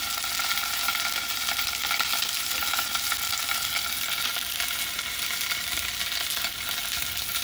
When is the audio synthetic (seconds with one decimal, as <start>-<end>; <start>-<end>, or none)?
none